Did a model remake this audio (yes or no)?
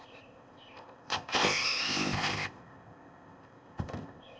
yes